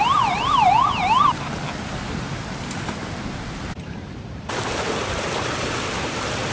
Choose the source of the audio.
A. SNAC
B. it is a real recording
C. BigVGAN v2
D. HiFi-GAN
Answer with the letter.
B